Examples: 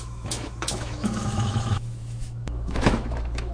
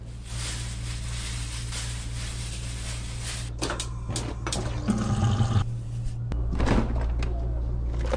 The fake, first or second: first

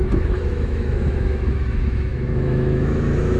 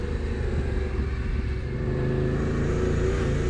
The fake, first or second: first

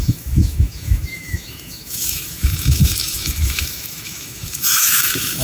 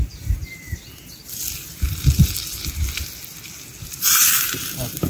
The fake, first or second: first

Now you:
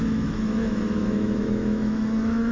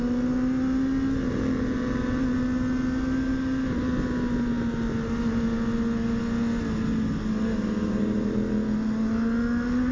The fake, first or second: first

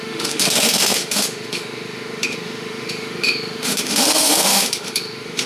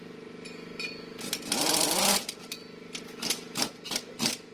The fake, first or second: first